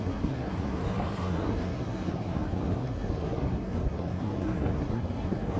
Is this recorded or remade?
remade